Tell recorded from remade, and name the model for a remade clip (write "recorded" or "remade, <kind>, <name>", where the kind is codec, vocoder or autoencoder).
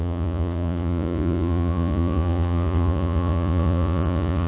remade, vocoder, Vocos